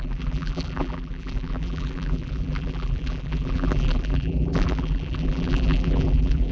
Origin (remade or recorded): remade